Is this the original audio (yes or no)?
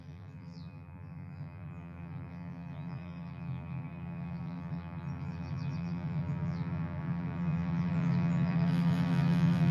no